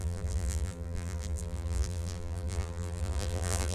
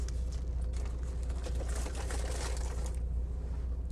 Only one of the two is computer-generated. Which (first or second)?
first